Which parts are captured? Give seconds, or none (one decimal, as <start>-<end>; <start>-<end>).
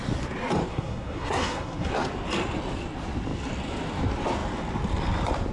0.0-0.7; 1.9-5.5